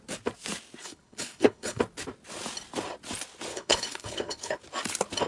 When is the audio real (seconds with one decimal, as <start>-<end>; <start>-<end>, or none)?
0.0-0.8; 1.8-3.5; 4.6-5.3